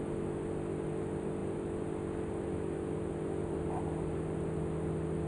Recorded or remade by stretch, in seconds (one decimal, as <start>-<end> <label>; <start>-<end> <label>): 0.0-5.3 recorded